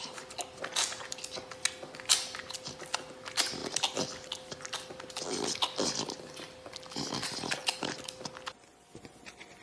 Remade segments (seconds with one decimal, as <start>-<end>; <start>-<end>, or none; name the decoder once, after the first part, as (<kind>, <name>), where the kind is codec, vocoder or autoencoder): none